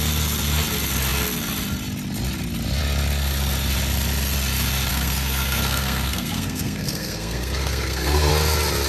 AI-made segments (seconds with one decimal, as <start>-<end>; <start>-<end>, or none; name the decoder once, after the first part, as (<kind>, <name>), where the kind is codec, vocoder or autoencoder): 4.9-8.3 (codec, SNAC)